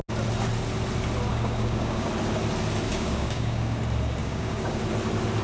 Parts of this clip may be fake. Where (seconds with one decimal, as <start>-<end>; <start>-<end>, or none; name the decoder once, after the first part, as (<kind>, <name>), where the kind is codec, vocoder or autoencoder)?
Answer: 1.3-2.1 (codec, DAC); 2.9-3.8; 4.2-4.8